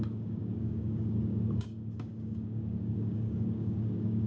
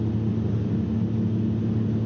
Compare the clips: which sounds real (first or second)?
second